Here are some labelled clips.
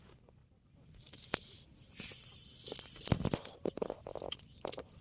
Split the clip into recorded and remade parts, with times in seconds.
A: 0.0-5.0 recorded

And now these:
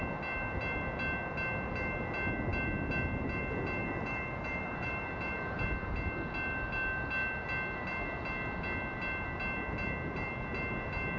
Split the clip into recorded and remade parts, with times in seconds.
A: 0.0-3.8 recorded; 3.8-5.6 remade; 5.6-11.2 recorded